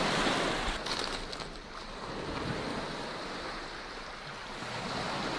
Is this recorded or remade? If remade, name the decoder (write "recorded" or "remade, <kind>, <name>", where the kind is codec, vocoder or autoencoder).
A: recorded